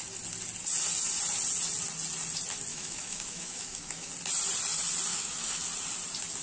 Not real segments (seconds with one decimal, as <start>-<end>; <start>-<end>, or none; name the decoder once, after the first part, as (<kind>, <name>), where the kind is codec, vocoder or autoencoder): 2.7-4.1 (autoencoder, DAC-VAE); 5.1-5.6